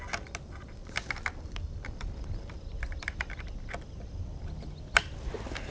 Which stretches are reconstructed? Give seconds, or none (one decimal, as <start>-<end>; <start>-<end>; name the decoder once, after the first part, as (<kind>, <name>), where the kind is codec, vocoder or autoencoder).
0.8-3.7 (vocoder, BigVGAN v2)